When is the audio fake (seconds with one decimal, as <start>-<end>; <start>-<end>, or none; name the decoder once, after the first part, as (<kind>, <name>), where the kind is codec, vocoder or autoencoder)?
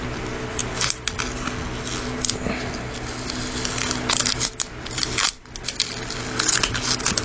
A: none